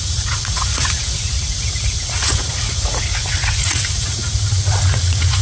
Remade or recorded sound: remade